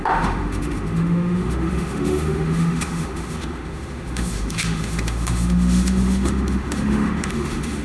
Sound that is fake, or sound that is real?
fake